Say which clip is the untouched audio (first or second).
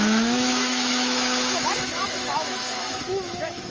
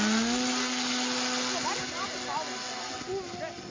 second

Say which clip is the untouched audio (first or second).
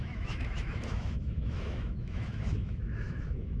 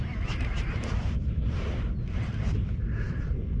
second